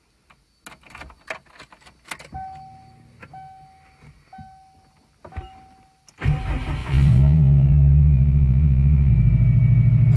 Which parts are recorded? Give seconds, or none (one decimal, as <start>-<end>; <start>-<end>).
0.0-6.8; 9.1-10.2